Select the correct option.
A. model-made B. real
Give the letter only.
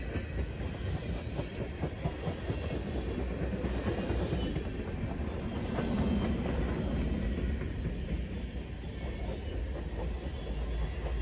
B